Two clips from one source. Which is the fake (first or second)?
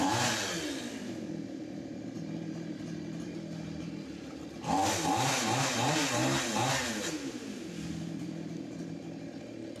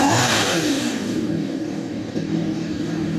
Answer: second